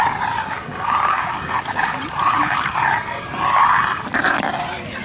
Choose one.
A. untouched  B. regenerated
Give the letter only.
A